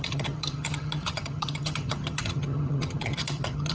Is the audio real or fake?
fake